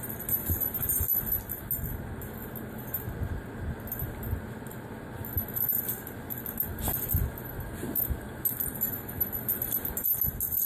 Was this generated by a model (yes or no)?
no